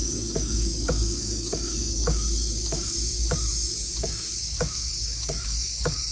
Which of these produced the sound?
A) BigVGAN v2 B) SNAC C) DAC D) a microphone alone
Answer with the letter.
C